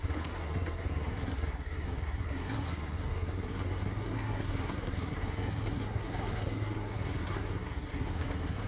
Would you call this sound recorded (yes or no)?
no